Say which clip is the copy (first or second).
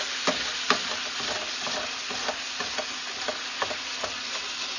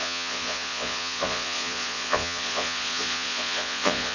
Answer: second